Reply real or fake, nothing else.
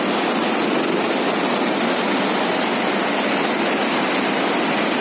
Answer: real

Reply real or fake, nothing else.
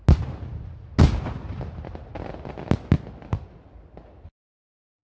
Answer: real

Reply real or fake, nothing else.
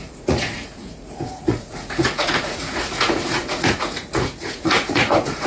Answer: fake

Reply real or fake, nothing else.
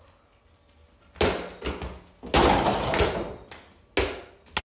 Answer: real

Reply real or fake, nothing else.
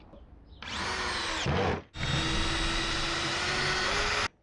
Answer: real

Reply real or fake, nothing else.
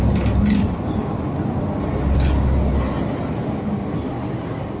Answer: real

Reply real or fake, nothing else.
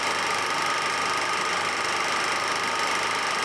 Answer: real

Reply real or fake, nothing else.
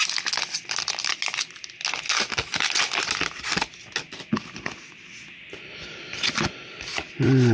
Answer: real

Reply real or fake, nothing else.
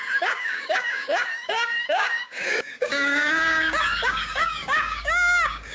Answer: fake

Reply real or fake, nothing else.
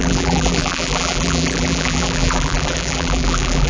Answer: fake